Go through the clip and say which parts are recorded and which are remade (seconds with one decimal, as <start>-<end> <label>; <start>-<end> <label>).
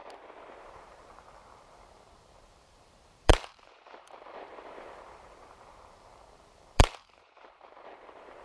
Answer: 0.0-0.6 recorded; 0.6-8.4 remade